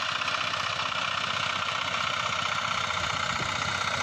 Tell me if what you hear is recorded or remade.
recorded